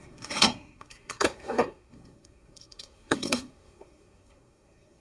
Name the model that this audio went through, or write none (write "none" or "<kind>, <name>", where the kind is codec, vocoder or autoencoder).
codec, SNAC